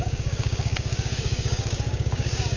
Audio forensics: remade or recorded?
remade